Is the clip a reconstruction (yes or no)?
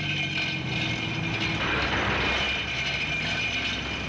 no